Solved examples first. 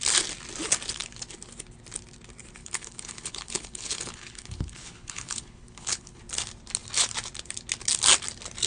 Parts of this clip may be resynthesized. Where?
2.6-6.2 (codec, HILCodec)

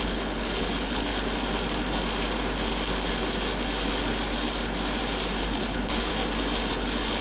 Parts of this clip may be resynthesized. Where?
0.0-1.1 (codec, HILCodec); 5.4-6.1; 6.7-7.2

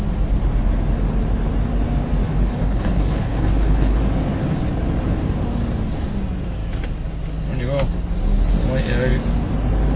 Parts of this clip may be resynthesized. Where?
2.2-4.0 (codec, HILCodec)

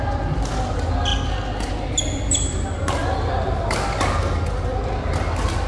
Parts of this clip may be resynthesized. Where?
none

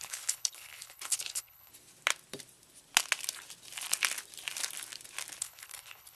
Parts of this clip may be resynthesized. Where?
0.0-1.7 (codec, HILCodec); 5.4-6.1

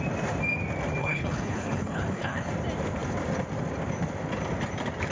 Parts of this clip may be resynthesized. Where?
1.0-2.5 (codec, HILCodec)